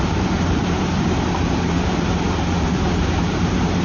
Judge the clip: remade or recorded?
remade